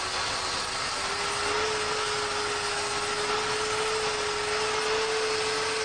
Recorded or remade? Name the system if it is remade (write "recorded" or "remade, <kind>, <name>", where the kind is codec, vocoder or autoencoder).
recorded